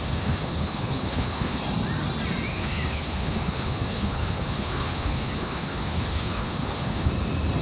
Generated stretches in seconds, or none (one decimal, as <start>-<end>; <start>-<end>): 0.0-1.6; 2.5-7.1